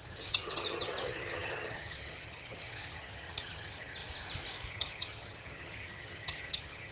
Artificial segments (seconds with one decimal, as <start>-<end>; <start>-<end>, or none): 0.0-4.0; 4.7-6.9